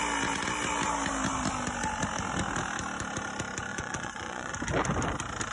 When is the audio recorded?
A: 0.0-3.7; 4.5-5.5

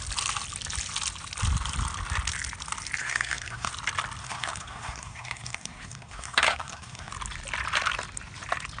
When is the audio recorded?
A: 0.0-3.0; 3.7-4.2; 7.1-8.8